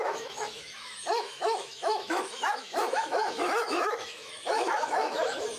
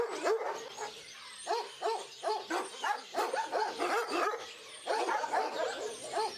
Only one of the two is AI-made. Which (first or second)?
first